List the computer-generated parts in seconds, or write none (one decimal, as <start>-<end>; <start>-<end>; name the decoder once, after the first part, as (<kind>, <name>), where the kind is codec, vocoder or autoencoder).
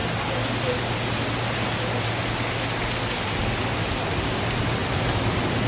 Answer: none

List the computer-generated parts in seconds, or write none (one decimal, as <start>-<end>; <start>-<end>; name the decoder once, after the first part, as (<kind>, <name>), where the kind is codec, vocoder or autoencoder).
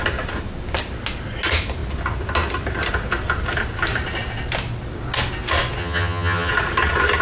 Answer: 5.8-6.5 (vocoder, HiFi-GAN)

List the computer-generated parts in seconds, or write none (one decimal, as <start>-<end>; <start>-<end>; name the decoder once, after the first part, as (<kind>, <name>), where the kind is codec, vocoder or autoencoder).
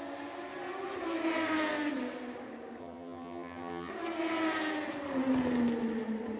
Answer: 2.8-3.9 (vocoder, HiFi-GAN)